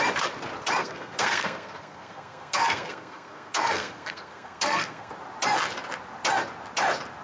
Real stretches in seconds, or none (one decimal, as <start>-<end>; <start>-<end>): 0.0-0.8; 5.1-7.2